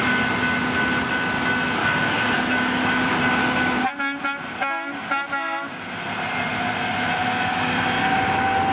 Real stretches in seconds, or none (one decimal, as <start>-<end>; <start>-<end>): 0.0-1.8; 2.3-8.7